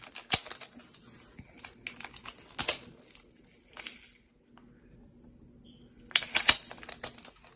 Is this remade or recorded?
recorded